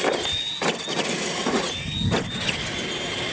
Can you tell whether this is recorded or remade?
recorded